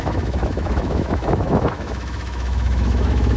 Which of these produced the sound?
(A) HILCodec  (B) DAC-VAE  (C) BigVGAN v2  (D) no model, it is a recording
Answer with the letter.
B